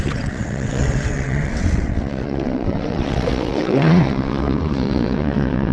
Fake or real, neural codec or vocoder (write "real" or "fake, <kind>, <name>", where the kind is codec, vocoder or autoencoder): fake, vocoder, WaveNeXt